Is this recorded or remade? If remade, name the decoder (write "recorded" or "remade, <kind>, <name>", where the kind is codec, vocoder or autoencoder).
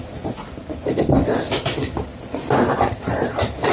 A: recorded